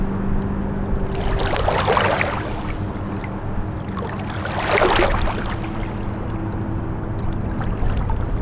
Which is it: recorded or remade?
recorded